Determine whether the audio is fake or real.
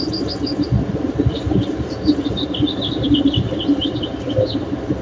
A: fake